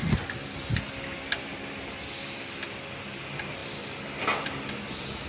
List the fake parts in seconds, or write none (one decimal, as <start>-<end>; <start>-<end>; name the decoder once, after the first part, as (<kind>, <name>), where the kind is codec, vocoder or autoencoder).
none